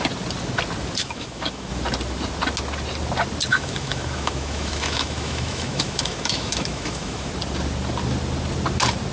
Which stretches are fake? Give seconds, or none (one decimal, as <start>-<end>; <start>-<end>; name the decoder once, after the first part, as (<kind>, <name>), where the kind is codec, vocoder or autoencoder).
1.0-1.7 (autoencoder, DAC-VAE); 3.5-7.3